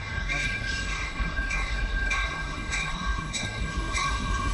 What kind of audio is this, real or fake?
fake